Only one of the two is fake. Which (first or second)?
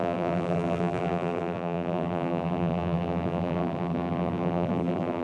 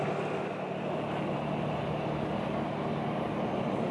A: first